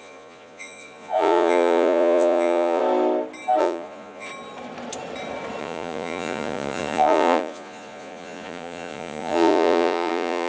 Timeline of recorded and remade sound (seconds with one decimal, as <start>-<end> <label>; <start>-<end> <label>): 0.0-2.8 remade; 2.8-3.6 recorded; 3.6-4.3 remade; 4.3-5.6 recorded; 5.6-10.5 remade

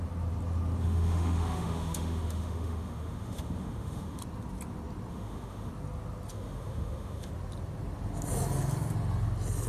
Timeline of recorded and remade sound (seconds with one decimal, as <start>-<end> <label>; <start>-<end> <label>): 0.0-0.8 recorded; 0.8-4.2 remade; 4.2-5.1 recorded; 5.1-5.7 remade; 5.7-6.3 recorded; 6.3-7.3 remade; 7.3-9.7 recorded

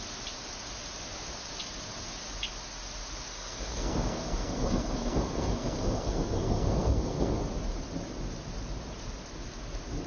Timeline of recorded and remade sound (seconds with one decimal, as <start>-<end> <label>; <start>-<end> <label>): 0.0-3.3 recorded; 3.3-7.4 remade; 7.4-10.1 recorded

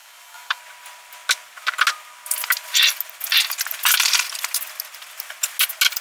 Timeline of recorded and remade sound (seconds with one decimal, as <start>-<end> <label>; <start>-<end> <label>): 0.0-0.6 remade; 0.6-6.0 recorded

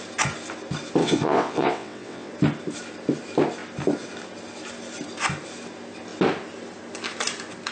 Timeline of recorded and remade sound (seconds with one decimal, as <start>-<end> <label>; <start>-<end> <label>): 0.0-1.0 recorded; 1.0-2.3 remade; 2.3-7.7 recorded

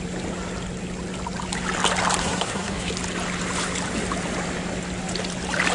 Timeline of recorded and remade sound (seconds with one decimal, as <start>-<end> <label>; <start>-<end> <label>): 0.0-2.2 recorded; 2.2-2.9 remade; 2.9-5.7 recorded

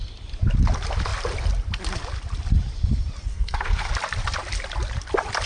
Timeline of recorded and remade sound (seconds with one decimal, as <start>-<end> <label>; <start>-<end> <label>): 0.0-3.3 recorded; 3.3-3.9 remade; 3.9-5.5 recorded

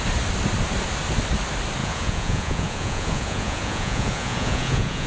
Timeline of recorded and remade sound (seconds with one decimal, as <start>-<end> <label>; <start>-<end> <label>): 0.0-1.8 recorded; 1.8-5.1 remade